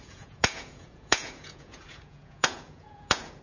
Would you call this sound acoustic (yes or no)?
no